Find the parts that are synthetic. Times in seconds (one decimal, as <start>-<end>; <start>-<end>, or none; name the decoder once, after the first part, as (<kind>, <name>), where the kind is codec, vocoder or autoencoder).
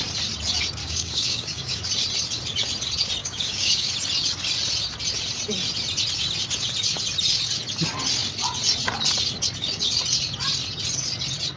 0.8-1.8 (codec, DAC); 3.2-3.9